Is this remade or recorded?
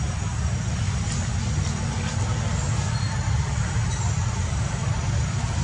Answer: recorded